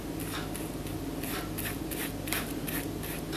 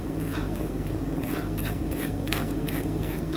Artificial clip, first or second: second